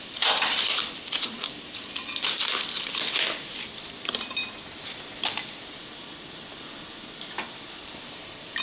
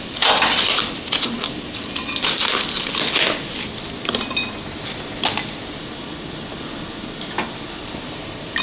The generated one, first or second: first